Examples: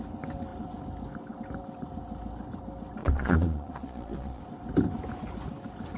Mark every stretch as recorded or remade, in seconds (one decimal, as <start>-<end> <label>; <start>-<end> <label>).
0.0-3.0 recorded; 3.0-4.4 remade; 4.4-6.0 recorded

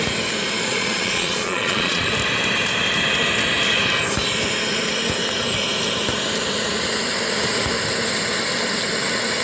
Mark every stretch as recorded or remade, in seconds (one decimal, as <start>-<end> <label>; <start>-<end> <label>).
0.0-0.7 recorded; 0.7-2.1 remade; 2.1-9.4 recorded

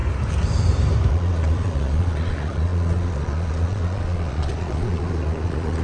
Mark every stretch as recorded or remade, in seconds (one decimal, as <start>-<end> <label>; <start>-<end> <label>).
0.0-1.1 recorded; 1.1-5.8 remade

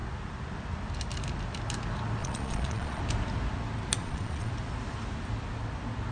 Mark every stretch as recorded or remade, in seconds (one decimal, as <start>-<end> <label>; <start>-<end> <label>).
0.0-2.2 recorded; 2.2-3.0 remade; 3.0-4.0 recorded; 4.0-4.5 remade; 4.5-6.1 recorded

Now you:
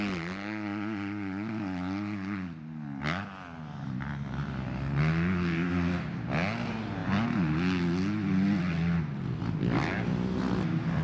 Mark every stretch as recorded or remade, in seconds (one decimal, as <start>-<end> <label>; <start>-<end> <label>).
0.0-11.0 recorded

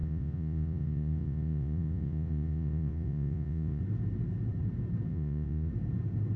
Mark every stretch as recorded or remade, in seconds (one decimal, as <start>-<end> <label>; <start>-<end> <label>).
0.0-3.8 remade; 3.8-5.1 recorded; 5.1-5.7 remade; 5.7-6.4 recorded

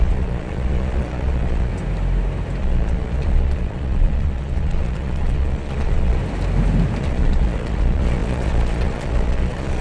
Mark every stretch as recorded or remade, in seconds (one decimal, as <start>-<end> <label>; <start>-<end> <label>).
0.0-1.7 remade; 1.7-2.6 recorded; 2.6-6.2 remade; 6.2-7.0 recorded; 7.0-9.8 remade